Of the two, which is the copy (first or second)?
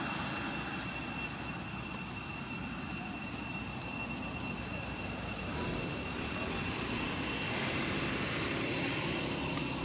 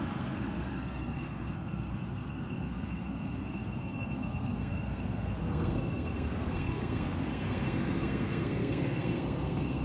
second